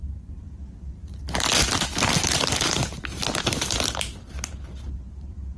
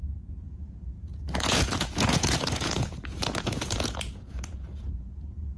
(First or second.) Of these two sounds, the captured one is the first